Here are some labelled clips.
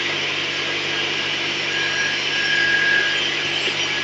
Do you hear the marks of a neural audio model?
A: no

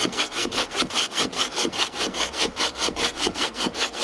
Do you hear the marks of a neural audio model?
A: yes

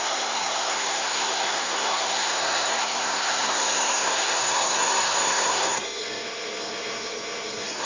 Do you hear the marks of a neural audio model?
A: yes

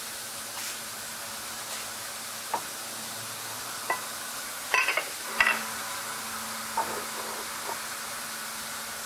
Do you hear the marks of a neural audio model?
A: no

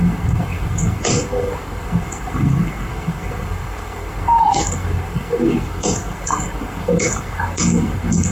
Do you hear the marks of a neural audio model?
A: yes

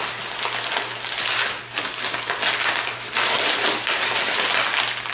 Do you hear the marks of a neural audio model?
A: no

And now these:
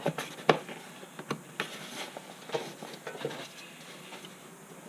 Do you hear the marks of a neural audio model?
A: no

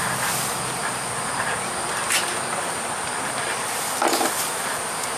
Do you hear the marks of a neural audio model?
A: no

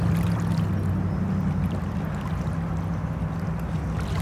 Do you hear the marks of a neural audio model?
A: no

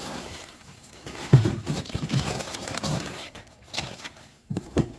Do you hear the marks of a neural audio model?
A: yes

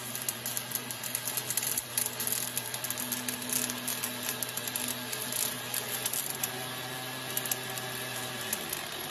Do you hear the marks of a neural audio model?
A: no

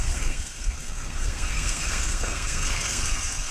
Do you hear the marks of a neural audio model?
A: yes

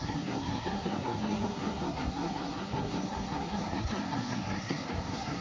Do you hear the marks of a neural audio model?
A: yes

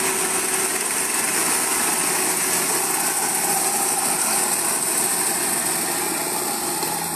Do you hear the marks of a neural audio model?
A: no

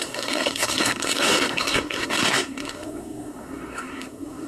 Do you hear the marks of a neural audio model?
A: yes